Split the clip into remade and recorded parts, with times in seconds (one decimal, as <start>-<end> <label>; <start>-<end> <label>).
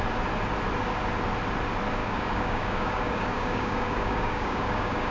0.0-2.0 recorded; 2.0-5.1 remade